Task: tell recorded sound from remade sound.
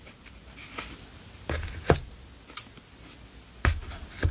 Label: recorded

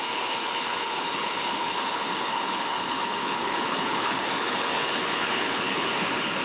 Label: remade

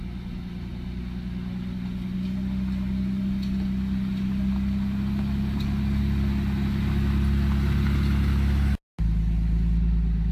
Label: recorded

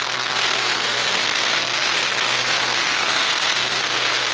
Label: remade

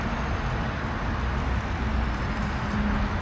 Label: recorded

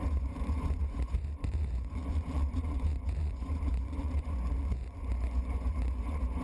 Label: remade